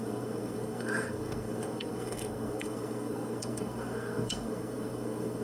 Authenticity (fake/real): fake